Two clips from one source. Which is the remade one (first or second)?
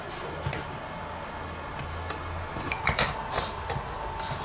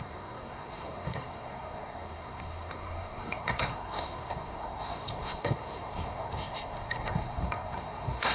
second